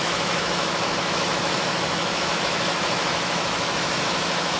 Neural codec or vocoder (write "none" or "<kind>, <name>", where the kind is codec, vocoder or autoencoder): autoencoder, DAC-VAE